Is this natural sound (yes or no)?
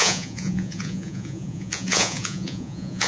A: no